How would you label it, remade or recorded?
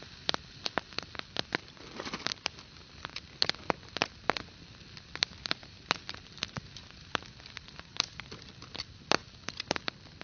recorded